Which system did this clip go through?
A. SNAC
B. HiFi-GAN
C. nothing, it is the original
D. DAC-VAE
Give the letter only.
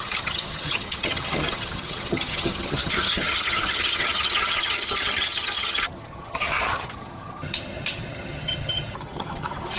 B